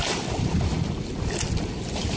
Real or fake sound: real